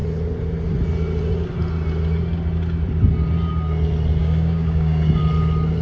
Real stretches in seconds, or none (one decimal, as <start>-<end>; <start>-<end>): 0.0-4.2; 5.2-5.8